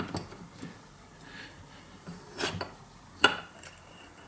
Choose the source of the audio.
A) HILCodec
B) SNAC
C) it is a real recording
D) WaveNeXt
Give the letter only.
C